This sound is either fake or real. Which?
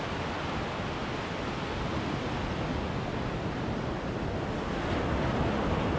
real